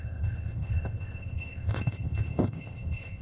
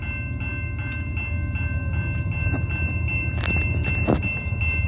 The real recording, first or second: second